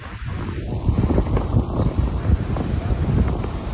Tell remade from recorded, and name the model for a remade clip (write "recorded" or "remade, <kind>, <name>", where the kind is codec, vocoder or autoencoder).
recorded